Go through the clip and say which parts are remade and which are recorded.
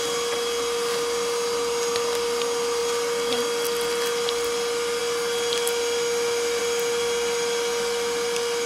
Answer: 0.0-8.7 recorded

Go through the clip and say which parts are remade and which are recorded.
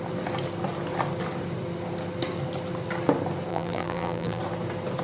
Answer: 0.0-3.5 recorded; 3.5-4.4 remade; 4.4-5.0 recorded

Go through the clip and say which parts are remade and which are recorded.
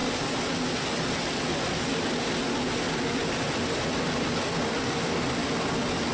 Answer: 0.0-6.1 recorded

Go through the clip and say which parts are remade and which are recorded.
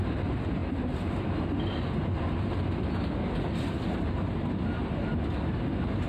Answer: 0.0-2.1 recorded; 2.1-4.2 remade; 4.2-6.1 recorded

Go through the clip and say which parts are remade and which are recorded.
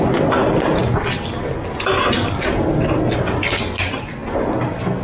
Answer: 0.0-5.0 recorded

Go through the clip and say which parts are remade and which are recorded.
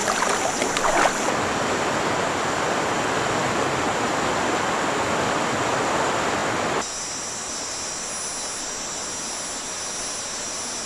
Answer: 0.0-0.7 remade; 0.7-10.9 recorded